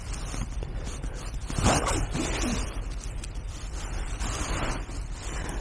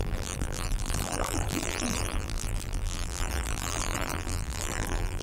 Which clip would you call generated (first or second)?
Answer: second